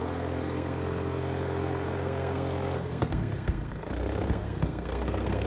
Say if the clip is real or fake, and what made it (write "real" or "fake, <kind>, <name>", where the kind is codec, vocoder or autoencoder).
fake, codec, SNAC